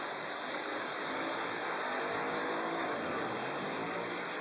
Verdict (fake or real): fake